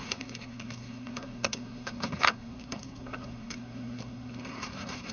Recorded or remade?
remade